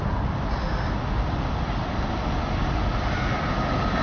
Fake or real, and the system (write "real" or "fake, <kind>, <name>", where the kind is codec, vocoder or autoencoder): real